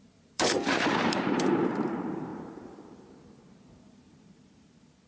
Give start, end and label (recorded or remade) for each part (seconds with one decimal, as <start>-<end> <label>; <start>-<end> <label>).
0.0-5.1 remade